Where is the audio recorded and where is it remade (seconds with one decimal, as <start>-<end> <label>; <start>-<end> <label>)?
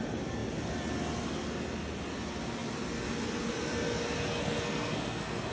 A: 0.0-4.4 recorded; 4.4-5.5 remade